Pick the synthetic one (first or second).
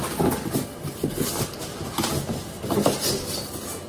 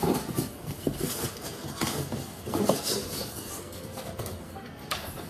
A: second